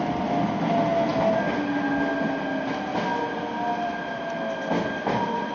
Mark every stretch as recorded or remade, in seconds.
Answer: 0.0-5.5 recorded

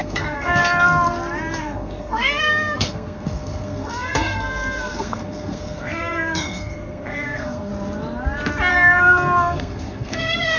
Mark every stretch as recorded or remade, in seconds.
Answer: 0.0-0.6 remade; 0.6-1.6 recorded; 1.6-7.7 remade; 7.7-8.7 recorded; 8.7-10.6 remade

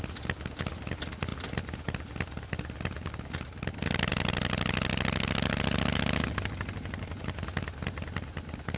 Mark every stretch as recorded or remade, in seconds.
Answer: 0.0-8.8 recorded

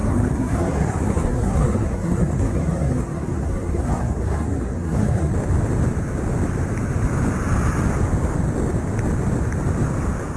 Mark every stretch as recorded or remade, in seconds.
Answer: 0.0-5.3 remade; 5.3-10.4 recorded

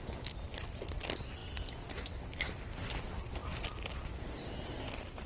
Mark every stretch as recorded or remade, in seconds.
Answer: 0.0-5.3 recorded

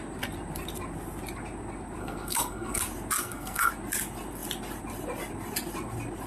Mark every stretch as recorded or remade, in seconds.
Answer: 0.0-2.0 recorded; 2.0-2.8 remade; 2.8-3.2 recorded; 3.2-3.7 remade; 3.7-6.3 recorded

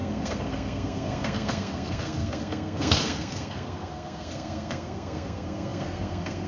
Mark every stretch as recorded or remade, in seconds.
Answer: 0.0-6.5 remade

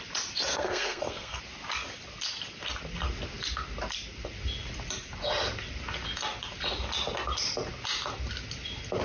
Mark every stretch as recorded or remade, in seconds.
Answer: 0.0-0.5 recorded; 0.5-1.4 remade; 1.4-9.0 recorded